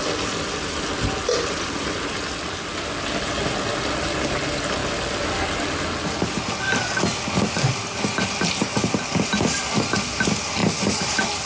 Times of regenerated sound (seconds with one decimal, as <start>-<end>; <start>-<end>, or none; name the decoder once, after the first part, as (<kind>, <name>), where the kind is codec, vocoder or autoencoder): none